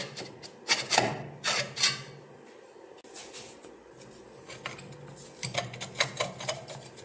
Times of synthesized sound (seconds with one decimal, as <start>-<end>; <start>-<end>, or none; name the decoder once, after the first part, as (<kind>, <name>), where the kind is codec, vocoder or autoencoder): none